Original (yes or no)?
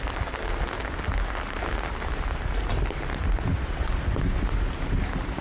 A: yes